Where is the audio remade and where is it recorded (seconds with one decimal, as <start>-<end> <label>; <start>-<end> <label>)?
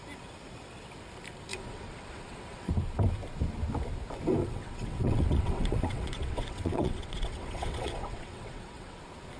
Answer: 0.0-1.5 recorded; 1.5-2.7 remade; 2.7-4.4 recorded; 4.4-9.0 remade; 9.0-9.4 recorded